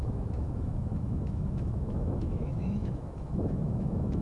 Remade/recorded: remade